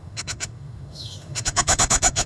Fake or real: fake